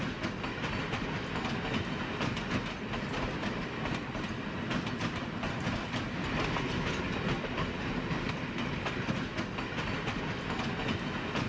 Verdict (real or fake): real